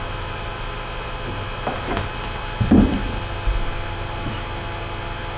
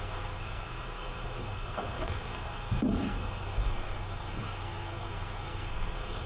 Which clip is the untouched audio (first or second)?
first